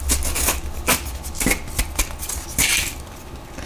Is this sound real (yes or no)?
yes